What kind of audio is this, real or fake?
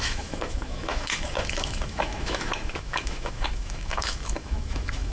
fake